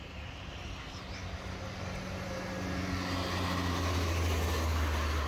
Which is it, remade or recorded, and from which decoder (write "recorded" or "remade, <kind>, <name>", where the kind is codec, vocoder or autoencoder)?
recorded